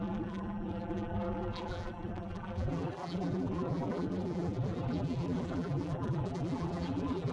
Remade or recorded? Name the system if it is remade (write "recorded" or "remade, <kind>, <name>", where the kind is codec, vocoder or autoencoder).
remade, vocoder, BigVGAN v2